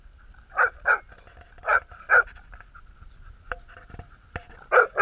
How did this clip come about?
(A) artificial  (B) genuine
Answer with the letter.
B